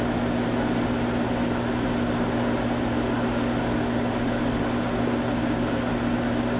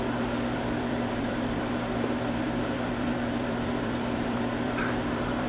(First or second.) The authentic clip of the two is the first